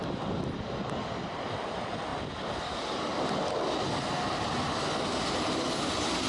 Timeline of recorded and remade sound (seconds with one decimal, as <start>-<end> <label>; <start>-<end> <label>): 0.0-6.3 recorded